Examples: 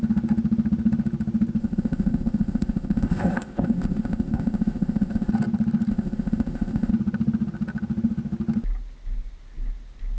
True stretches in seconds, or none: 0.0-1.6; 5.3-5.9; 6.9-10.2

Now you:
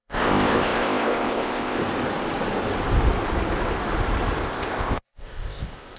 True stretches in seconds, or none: 1.8-4.4

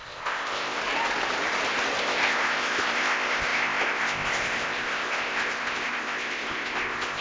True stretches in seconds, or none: 0.8-2.0

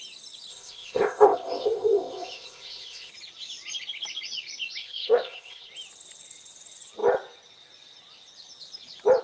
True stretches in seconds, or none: 0.0-0.5; 3.1-4.8; 5.7-9.2

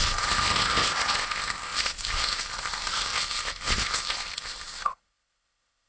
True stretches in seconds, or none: none

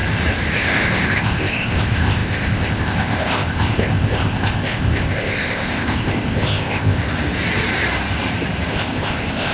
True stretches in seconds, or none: 0.0-0.5; 7.0-8.7

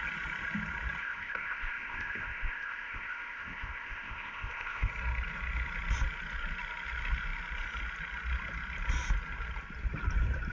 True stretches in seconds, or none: 0.0-1.0; 4.9-10.5

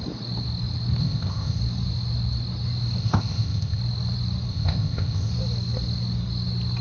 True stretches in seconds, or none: 0.0-1.0; 1.6-3.0; 3.8-4.5; 5.3-6.8